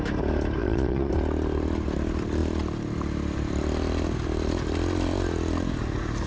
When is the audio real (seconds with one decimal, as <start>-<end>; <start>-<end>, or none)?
0.0-0.6; 1.1-6.3